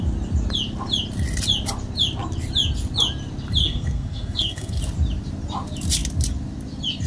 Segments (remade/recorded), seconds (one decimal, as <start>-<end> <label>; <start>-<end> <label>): 0.0-3.6 recorded; 3.6-4.8 remade; 4.8-7.1 recorded

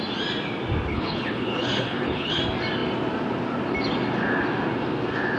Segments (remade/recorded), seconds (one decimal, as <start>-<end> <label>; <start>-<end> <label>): 0.0-0.9 recorded; 0.9-2.4 remade; 2.4-5.4 recorded

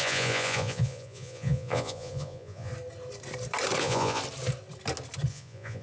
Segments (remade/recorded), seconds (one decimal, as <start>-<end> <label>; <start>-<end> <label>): 0.0-2.7 remade; 2.7-3.8 recorded; 3.8-4.2 remade; 4.2-5.3 recorded; 5.3-5.8 remade

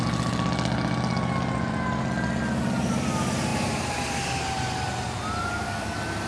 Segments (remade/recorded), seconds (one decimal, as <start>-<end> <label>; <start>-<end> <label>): 0.0-6.3 recorded